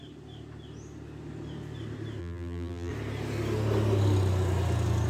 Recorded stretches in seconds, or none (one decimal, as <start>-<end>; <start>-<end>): 0.0-2.2; 2.9-5.1